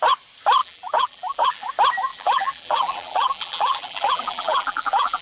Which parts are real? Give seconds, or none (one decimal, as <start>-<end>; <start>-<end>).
0.0-0.6; 1.7-2.1

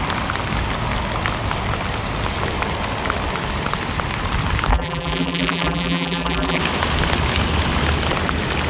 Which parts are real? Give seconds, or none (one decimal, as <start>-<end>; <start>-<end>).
0.0-4.7; 6.6-8.7

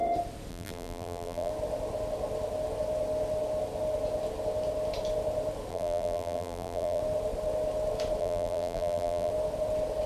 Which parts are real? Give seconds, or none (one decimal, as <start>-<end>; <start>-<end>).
0.0-0.5; 1.5-5.7; 7.0-8.2; 9.3-10.1

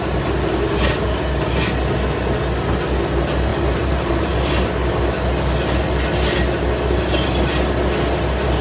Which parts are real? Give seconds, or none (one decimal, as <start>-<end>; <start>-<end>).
0.0-3.5; 4.3-8.6

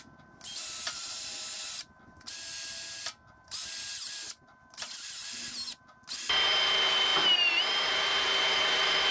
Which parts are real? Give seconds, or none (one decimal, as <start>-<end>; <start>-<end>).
0.0-9.1

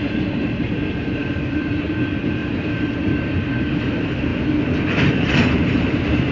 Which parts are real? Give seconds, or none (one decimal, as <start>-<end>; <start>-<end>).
4.3-5.1

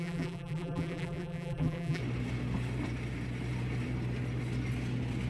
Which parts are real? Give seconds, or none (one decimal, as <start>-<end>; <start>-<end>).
2.0-5.3